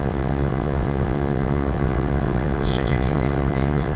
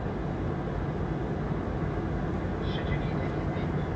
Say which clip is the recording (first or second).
second